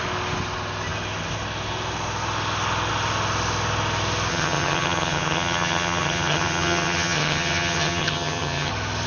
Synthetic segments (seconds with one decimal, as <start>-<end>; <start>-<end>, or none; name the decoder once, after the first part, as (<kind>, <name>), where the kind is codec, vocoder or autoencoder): 4.3-8.7 (vocoder, HiFi-GAN)